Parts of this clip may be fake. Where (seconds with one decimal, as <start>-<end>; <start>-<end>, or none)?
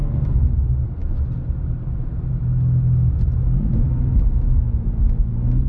none